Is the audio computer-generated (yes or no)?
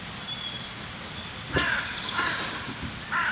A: no